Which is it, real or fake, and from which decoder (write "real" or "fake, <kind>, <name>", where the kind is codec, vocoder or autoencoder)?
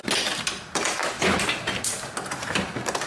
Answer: real